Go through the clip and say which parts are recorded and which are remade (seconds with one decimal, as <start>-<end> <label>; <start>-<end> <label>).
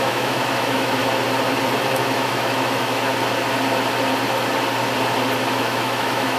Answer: 0.0-1.0 remade; 1.0-1.8 recorded; 1.8-3.1 remade; 3.1-5.6 recorded; 5.6-6.4 remade